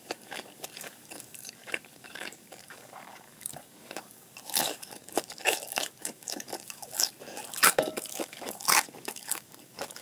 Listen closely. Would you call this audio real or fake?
fake